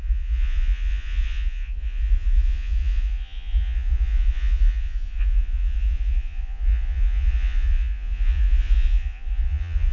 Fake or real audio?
fake